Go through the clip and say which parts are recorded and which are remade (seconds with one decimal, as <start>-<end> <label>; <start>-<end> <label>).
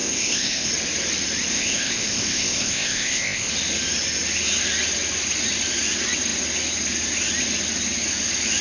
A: 0.0-0.7 remade; 0.7-1.5 recorded; 1.5-3.5 remade; 3.5-8.6 recorded